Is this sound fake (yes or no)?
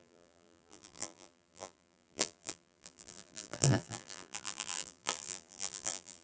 yes